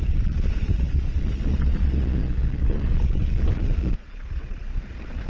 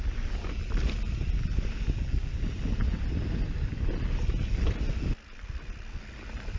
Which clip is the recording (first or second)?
second